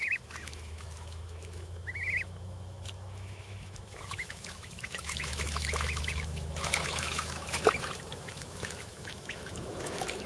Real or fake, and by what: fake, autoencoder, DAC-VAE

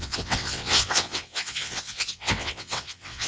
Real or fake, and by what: fake, vocoder, WaveNeXt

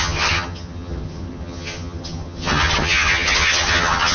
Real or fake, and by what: fake, vocoder, HiFi-GAN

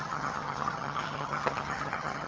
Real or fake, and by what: fake, vocoder, HiFi-GAN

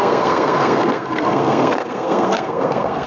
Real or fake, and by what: fake, codec, SNAC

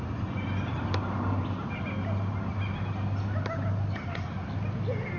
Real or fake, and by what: real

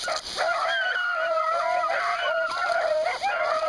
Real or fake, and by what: fake, vocoder, BigVGAN v2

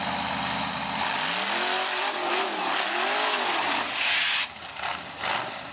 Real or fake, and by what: real